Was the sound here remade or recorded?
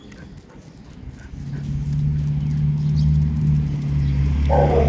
recorded